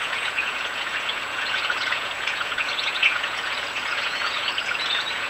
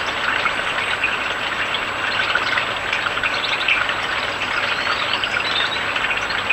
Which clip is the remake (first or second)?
first